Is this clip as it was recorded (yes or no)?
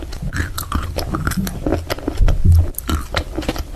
yes